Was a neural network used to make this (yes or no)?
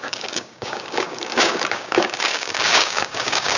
yes